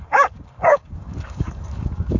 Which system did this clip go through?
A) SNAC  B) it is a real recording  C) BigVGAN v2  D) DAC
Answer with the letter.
D